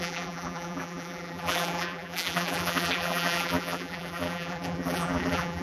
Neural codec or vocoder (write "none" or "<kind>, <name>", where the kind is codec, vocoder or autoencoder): vocoder, BigVGAN v2